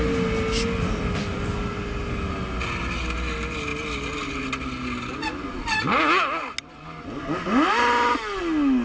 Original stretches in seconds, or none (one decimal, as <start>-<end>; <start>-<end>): 0.0-8.8